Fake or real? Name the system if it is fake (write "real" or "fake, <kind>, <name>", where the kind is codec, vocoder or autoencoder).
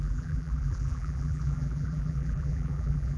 fake, vocoder, BigVGAN v2